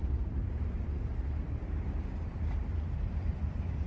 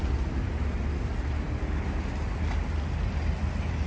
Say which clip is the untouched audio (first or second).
second